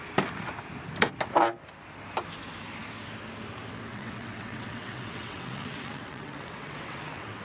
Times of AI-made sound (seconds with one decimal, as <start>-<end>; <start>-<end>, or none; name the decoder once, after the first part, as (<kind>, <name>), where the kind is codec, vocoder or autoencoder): 3.9-7.4 (vocoder, WaveNeXt)